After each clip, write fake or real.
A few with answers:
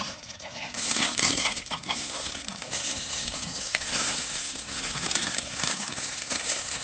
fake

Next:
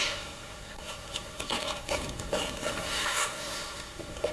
fake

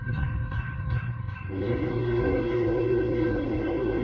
fake